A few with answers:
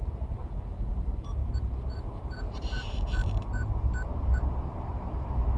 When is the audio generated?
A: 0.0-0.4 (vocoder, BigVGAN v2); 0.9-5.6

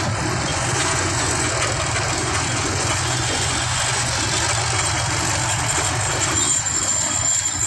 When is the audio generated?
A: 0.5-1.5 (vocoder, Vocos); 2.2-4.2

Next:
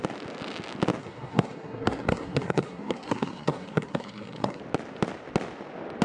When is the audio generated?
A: 1.0-4.6 (codec, SNAC)

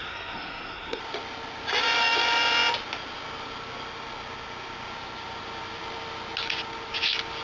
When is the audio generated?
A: 0.0-1.0 (codec, SNAC)

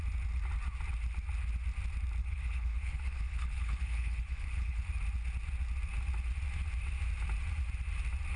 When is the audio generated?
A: 2.2-4.8 (codec, HILCodec)

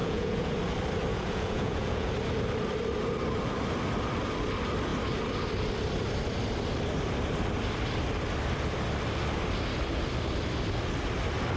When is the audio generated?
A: 0.0-0.5 (vocoder, Vocos); 1.1-2.1

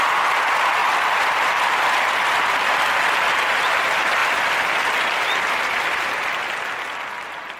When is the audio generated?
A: 0.8-2.6 (vocoder, BigVGAN v2); 4.2-6.4

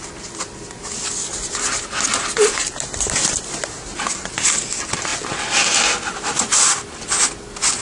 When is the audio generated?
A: none